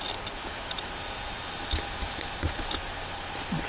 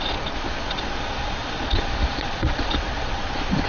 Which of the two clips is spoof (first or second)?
second